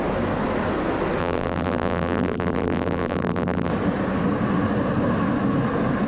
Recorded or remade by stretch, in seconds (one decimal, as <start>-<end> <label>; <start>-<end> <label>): 0.0-1.2 recorded; 1.2-3.7 remade; 3.7-6.1 recorded

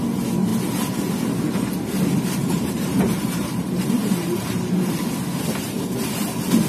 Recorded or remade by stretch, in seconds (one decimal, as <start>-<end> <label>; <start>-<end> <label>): 0.0-2.4 recorded; 2.4-5.0 remade; 5.0-6.7 recorded

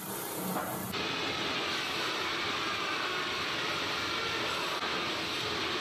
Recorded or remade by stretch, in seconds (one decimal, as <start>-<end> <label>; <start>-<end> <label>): 0.0-1.6 recorded; 1.6-4.2 remade; 4.2-5.8 recorded

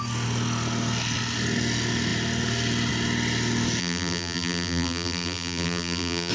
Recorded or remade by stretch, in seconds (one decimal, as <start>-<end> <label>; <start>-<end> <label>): 0.0-3.8 recorded; 3.8-6.3 remade

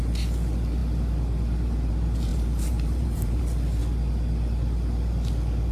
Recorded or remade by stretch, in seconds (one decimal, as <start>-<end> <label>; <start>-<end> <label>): 0.0-2.3 recorded; 2.3-3.4 remade; 3.4-5.7 recorded

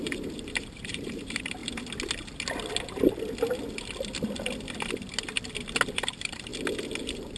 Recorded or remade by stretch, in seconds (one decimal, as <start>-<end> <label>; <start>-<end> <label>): 0.0-1.6 remade; 1.6-5.9 recorded; 5.9-6.5 remade; 6.5-7.0 recorded; 7.0-7.4 remade

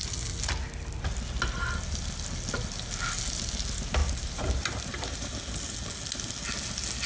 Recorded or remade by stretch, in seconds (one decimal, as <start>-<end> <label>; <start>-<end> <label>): 0.0-4.0 recorded; 4.0-5.3 remade; 5.3-7.1 recorded

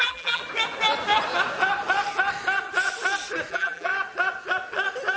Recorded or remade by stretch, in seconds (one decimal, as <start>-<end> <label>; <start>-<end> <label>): 0.0-0.4 remade; 0.4-3.5 recorded; 3.5-3.9 remade; 3.9-5.2 recorded